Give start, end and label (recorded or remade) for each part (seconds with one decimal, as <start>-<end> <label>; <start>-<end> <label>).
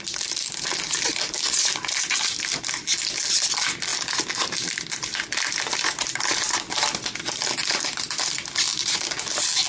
0.0-9.7 recorded